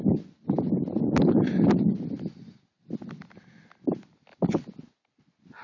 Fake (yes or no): no